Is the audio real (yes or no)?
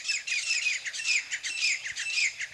yes